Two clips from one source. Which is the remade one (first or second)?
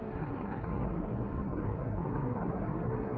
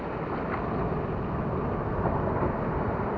first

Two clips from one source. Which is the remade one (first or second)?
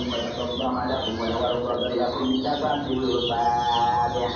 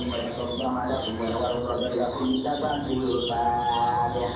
second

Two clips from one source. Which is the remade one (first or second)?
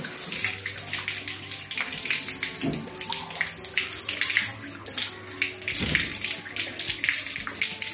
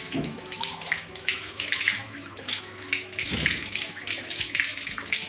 second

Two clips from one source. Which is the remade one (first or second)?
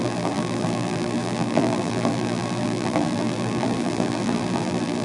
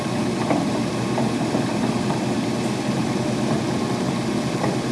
first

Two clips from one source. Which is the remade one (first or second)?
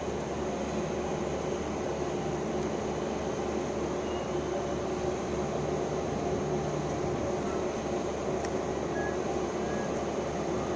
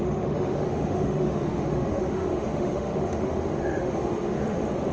second